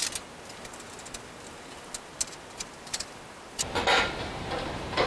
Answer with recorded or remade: recorded